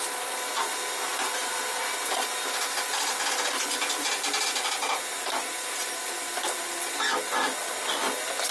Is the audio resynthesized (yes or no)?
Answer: no